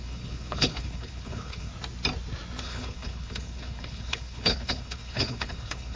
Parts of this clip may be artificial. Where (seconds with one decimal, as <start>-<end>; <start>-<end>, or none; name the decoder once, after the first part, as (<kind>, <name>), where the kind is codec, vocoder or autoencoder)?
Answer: 0.0-1.7 (codec, HILCodec); 2.6-6.0